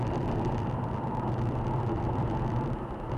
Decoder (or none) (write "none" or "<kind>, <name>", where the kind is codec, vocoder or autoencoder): none